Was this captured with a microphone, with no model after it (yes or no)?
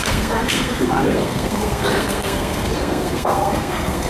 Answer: no